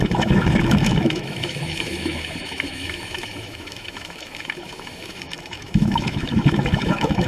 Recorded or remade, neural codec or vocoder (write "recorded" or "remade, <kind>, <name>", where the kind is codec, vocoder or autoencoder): remade, autoencoder, DAC-VAE